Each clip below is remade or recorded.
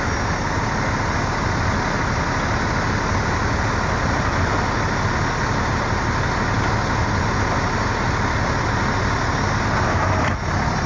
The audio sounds recorded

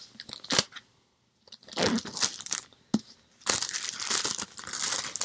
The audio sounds recorded